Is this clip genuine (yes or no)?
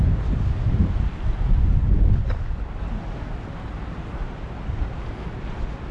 yes